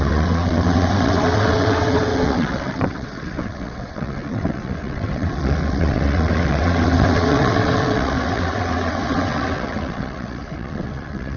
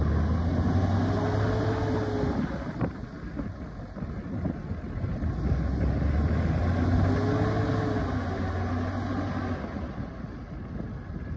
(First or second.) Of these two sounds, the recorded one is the second